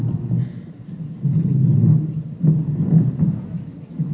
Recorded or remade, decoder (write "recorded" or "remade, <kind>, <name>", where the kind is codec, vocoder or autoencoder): recorded